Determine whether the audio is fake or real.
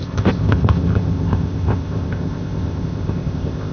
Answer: fake